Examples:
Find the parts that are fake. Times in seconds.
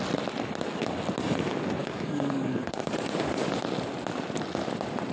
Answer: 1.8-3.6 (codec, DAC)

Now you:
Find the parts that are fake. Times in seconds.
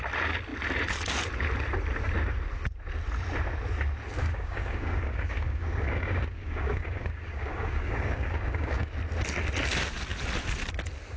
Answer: 4.2-8.9 (codec, DAC)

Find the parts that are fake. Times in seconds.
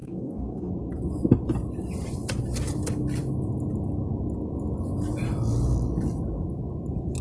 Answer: 0.0-0.7 (codec, DAC)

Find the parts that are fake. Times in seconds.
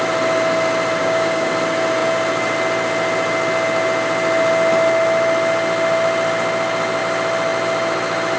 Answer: 1.0-1.5 (codec, DAC)